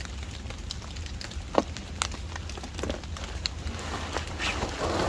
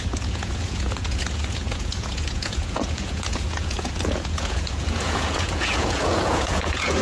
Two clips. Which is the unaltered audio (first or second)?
first